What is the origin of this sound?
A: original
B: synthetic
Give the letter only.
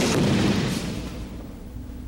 A